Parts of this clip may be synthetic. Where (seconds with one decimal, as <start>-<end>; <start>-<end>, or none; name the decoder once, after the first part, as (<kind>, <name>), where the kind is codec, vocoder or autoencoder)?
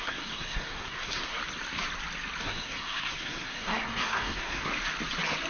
0.0-1.4 (codec, SNAC); 2.4-4.7